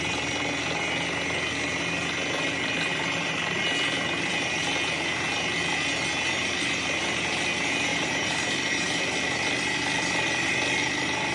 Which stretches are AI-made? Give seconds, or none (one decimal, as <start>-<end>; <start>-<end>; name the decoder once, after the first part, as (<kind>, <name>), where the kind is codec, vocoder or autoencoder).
2.9-3.6 (vocoder, BigVGAN v2); 7.9-9.0